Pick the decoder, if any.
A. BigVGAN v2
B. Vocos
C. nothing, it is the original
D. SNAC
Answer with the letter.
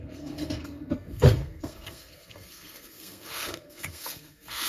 D